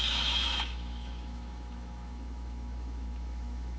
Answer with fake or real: fake